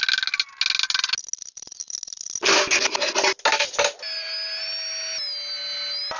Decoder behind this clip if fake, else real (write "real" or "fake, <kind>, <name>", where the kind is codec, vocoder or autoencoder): real